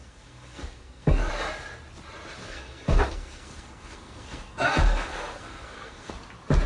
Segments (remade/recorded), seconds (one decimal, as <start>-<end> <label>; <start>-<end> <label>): 0.0-1.3 remade; 1.3-2.4 recorded; 2.4-6.1 remade; 6.1-6.7 recorded